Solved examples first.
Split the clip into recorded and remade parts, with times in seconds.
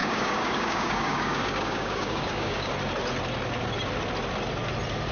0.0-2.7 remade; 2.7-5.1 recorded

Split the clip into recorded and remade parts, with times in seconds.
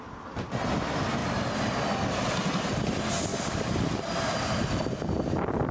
0.0-3.3 recorded; 3.3-4.0 remade; 4.0-5.7 recorded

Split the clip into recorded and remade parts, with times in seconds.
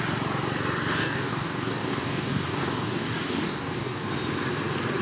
0.0-1.0 recorded; 1.0-4.0 remade; 4.0-5.0 recorded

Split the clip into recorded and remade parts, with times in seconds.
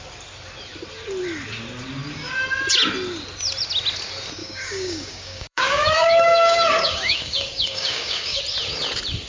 0.0-4.4 recorded; 4.4-8.4 remade; 8.4-9.3 recorded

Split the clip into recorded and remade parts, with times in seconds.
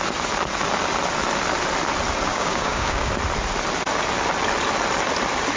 0.0-2.3 recorded; 2.3-3.1 remade; 3.1-5.6 recorded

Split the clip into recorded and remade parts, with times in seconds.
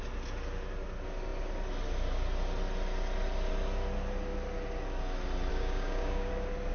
0.0-5.5 recorded; 5.5-6.3 remade; 6.3-6.7 recorded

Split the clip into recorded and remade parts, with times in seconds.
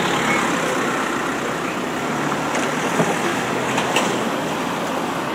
0.0-3.3 recorded; 3.3-4.5 remade; 4.5-5.3 recorded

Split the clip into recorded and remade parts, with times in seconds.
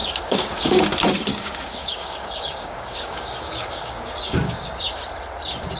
0.0-0.8 remade; 0.8-1.3 recorded; 1.3-4.8 remade; 4.8-5.8 recorded